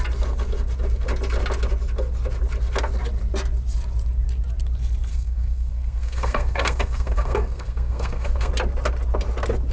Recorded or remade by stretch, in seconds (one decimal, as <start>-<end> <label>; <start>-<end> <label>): 0.0-5.1 recorded; 5.1-8.5 remade; 8.5-9.7 recorded